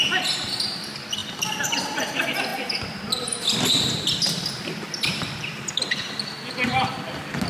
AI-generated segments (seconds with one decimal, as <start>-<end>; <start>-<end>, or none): none